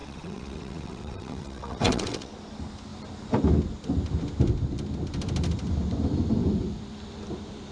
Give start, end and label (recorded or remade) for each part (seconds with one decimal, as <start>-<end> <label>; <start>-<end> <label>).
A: 0.0-2.3 remade; 2.3-7.7 recorded